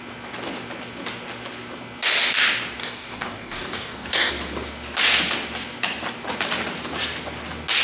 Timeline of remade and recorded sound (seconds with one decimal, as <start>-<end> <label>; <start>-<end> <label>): 0.0-2.8 recorded; 2.8-4.3 remade; 4.3-7.8 recorded